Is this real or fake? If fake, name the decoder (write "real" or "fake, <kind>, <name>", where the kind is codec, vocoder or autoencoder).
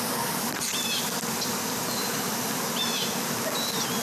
real